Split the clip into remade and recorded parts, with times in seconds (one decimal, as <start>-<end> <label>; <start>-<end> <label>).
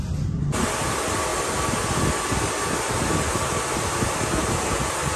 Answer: 0.0-5.2 recorded